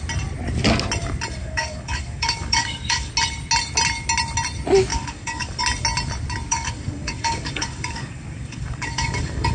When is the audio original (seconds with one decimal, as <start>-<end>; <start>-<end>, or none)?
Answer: 0.0-1.4; 3.1-4.9; 5.6-6.5

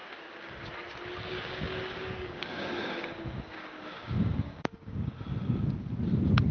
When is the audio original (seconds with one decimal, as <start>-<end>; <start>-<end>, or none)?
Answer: 0.7-1.3; 5.2-6.5

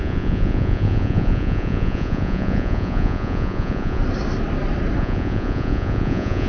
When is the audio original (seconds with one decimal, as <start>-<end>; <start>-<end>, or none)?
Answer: 4.0-5.0

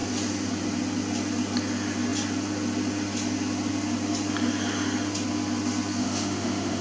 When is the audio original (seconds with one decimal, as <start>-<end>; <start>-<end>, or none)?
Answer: 0.0-6.0